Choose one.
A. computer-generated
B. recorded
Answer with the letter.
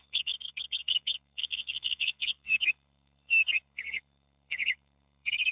A